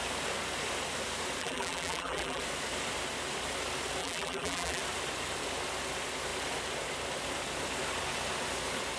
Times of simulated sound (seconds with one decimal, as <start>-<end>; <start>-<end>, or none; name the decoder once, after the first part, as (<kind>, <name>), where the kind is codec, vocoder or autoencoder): 1.4-2.4 (vocoder, BigVGAN v2); 4.0-4.8